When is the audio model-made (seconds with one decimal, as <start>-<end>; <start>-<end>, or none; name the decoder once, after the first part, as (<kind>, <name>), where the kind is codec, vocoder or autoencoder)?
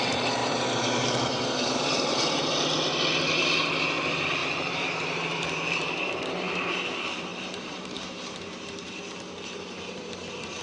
0.4-2.2 (vocoder, BigVGAN v2); 4.4-6.8; 7.3-9.0